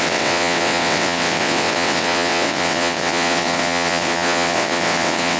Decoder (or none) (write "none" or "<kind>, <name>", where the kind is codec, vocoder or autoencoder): vocoder, WaveNeXt